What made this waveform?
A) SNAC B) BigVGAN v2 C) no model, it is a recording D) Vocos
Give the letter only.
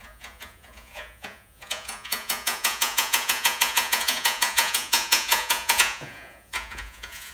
D